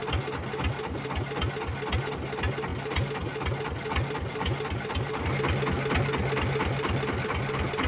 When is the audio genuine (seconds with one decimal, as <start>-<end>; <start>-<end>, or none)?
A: 0.0-7.9